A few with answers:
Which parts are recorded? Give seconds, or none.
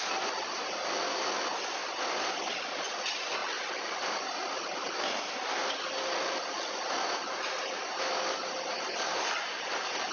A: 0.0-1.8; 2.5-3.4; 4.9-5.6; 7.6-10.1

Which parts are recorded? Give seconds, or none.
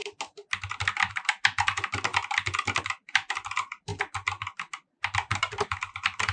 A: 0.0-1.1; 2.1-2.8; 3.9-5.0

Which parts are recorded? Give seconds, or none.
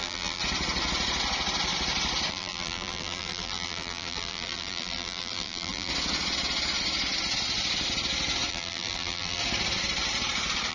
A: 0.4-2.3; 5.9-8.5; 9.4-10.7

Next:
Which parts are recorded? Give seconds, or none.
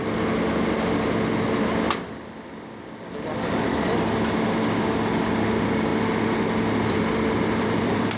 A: 0.0-3.6; 5.9-6.9